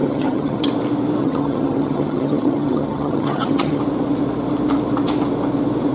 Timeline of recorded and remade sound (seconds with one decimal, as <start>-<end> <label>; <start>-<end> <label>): 0.0-0.7 remade; 0.7-1.2 recorded; 1.2-3.8 remade; 3.8-5.9 recorded